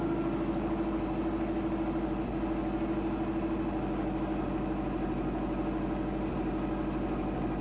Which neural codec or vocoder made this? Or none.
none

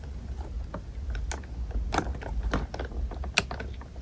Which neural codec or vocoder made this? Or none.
none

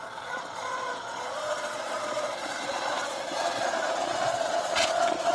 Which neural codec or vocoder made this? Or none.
vocoder, Vocos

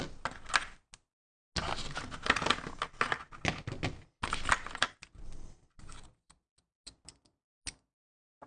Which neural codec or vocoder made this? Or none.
none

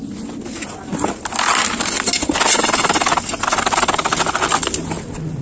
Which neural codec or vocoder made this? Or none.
none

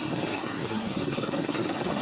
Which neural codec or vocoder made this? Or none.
codec, SNAC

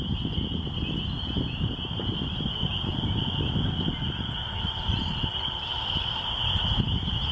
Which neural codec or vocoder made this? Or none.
none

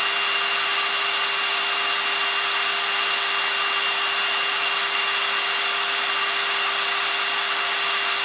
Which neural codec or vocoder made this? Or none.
none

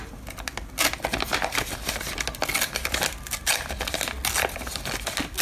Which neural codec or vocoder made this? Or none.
none